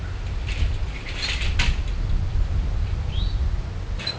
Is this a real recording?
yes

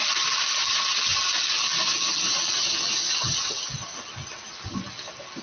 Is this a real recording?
yes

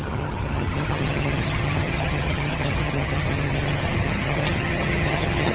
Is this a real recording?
no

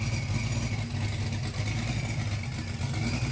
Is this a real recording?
yes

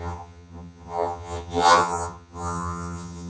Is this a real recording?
no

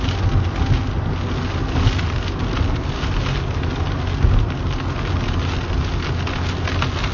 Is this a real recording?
yes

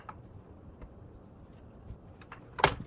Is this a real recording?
yes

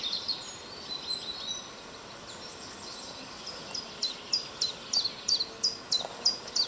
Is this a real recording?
yes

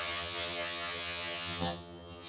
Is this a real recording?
no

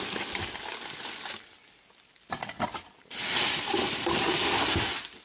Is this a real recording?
yes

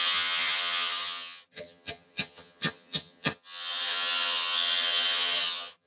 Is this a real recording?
no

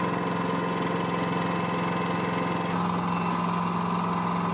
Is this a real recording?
yes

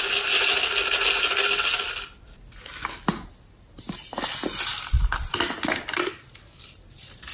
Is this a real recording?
yes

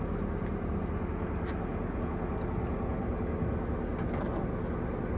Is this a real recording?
yes